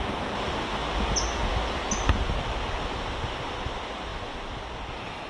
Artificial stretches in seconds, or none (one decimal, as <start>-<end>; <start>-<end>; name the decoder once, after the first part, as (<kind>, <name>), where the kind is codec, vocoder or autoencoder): none